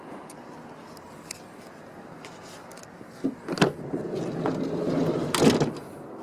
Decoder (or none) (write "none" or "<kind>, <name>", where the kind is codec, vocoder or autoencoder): none